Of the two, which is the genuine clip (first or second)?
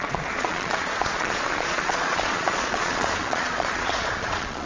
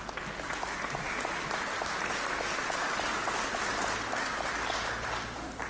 second